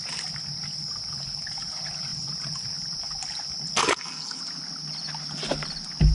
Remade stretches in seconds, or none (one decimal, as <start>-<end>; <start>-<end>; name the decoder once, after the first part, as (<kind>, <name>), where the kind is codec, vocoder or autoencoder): 3.8-4.4 (codec, SNAC)